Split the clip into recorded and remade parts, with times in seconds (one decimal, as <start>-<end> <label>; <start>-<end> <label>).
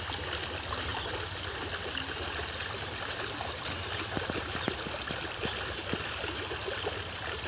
0.0-7.5 recorded